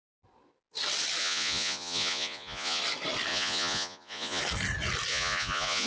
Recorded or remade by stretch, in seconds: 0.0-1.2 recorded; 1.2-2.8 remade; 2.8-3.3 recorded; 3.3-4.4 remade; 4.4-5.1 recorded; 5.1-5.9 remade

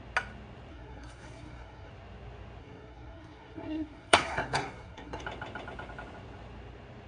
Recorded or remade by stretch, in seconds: 0.0-0.7 recorded; 0.7-1.9 remade; 1.9-2.6 recorded; 2.6-5.2 remade; 5.2-7.1 recorded

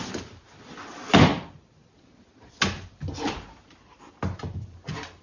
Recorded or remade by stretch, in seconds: 0.0-5.2 recorded

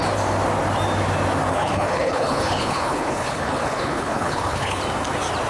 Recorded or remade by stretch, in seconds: 0.0-1.5 recorded; 1.5-4.8 remade; 4.8-5.5 recorded

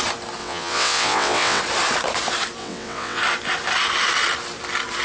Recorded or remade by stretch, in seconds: 0.0-0.4 recorded; 0.4-1.6 remade; 1.6-2.6 recorded; 2.6-3.2 remade; 3.2-5.0 recorded

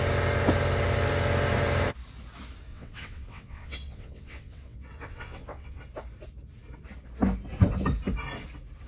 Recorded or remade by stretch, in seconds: 0.0-2.7 recorded; 2.7-5.8 remade; 5.8-8.9 recorded